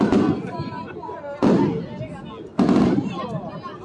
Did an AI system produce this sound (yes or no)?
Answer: no